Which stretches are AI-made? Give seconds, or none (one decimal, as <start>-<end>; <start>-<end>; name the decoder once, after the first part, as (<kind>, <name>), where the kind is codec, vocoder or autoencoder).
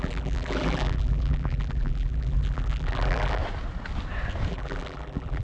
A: 0.0-3.4 (vocoder, BigVGAN v2); 4.5-5.4